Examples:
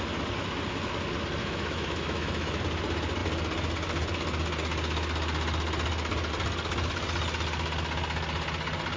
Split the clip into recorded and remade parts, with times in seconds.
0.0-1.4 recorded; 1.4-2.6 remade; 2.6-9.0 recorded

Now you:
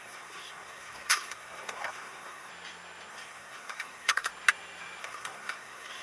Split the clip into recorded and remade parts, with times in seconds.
0.0-2.5 remade; 2.5-3.1 recorded; 3.1-4.3 remade; 4.3-5.0 recorded; 5.0-6.0 remade

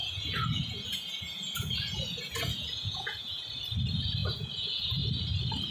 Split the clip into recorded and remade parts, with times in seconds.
0.0-3.4 remade; 3.4-4.2 recorded; 4.2-5.0 remade; 5.0-5.7 recorded

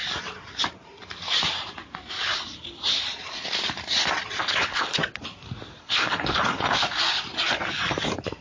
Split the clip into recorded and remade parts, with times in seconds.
0.0-4.4 recorded; 4.4-5.0 remade; 5.0-5.8 recorded; 5.8-6.8 remade; 6.8-8.4 recorded

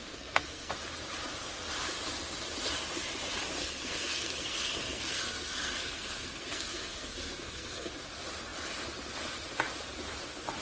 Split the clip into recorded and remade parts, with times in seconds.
0.0-0.7 remade; 0.7-3.6 recorded; 3.6-7.9 remade; 7.9-10.6 recorded